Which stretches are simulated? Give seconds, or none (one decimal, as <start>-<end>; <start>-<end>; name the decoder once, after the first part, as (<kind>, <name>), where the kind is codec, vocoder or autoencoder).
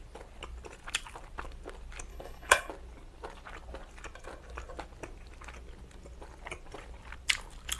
2.1-2.7 (codec, HILCodec)